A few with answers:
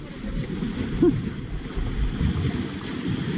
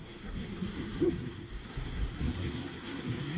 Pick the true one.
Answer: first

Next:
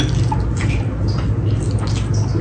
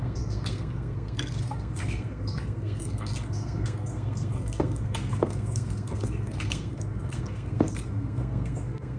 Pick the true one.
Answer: first